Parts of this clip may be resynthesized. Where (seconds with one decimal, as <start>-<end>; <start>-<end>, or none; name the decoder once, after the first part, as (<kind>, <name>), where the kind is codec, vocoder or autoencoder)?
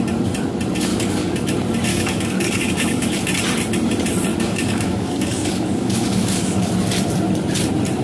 0.9-1.5 (codec, DAC); 1.9-3.3; 4.3-6.7